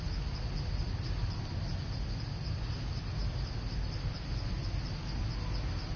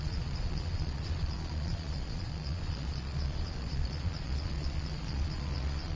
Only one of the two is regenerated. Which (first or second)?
second